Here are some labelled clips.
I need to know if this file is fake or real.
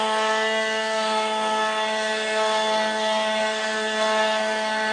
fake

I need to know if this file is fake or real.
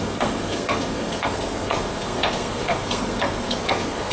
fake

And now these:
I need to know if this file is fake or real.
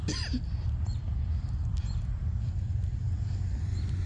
real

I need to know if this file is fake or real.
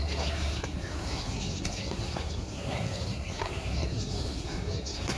fake